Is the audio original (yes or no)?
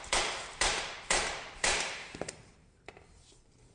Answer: no